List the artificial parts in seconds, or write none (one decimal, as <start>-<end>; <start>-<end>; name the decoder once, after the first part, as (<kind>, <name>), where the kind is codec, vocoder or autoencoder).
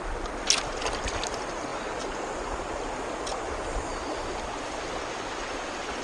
none